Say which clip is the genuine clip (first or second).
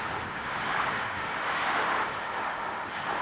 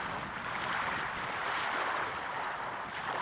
second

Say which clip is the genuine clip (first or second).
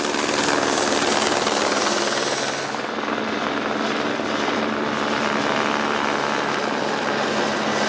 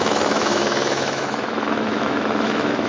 first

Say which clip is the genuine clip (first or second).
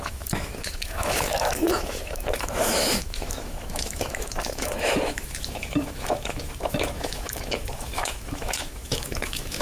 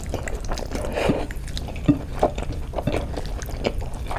second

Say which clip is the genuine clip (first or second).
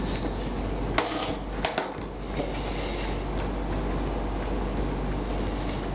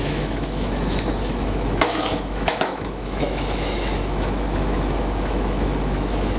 first